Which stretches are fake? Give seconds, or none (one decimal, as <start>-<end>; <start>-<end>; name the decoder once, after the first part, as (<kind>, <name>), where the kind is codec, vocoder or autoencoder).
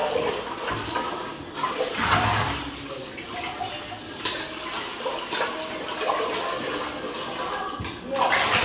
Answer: none